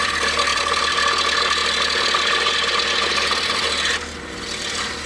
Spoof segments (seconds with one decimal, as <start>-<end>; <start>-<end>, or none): none